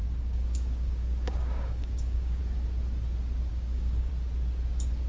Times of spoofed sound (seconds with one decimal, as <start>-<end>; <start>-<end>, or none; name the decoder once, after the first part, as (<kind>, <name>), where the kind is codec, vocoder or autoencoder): 0.0-2.4 (codec, DAC); 3.5-4.1